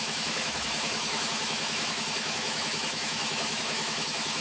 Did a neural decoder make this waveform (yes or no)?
yes